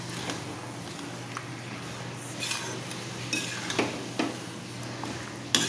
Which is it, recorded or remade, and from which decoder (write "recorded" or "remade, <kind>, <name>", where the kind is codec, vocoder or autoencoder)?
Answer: recorded